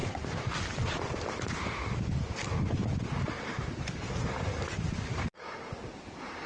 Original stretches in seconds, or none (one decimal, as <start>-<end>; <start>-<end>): 0.6-3.5